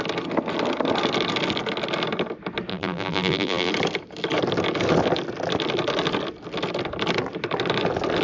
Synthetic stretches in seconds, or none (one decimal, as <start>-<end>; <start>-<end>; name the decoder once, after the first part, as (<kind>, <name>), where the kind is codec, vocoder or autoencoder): 2.7-3.7 (vocoder, BigVGAN v2)